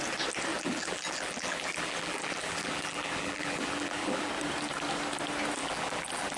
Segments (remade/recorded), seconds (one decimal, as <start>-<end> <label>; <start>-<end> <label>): 0.0-0.5 recorded; 0.5-4.3 remade; 4.3-5.6 recorded; 5.6-6.4 remade